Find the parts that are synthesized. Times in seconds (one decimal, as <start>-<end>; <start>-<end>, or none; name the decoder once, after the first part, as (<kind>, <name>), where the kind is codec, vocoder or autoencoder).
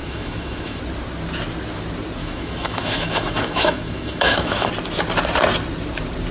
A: 0.0-0.8 (autoencoder, DAC-VAE); 2.2-4.7